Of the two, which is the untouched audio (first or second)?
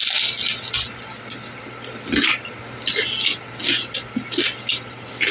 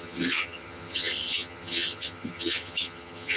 first